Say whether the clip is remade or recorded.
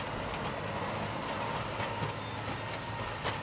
recorded